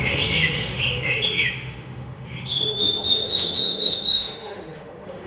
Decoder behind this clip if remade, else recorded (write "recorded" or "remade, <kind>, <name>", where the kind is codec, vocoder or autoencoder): remade, autoencoder, DAC-VAE